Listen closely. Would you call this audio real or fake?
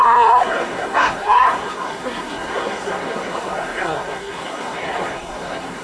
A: fake